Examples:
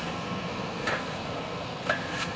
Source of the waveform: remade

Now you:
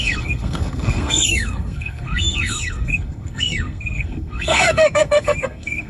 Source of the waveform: remade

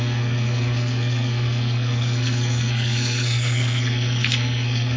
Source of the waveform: remade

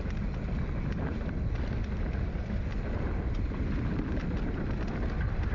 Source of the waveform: recorded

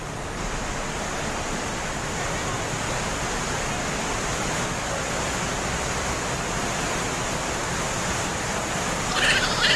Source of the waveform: recorded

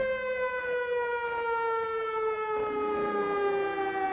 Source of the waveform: recorded